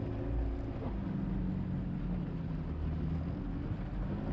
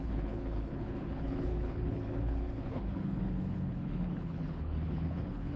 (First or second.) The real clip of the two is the first